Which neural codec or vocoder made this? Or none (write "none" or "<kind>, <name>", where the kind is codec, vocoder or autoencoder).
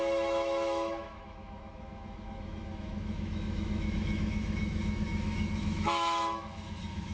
autoencoder, DAC-VAE